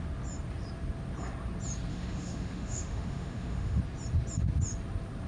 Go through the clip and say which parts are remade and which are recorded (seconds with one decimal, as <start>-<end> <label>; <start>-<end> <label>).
0.0-1.9 recorded; 1.9-3.8 remade; 3.8-5.3 recorded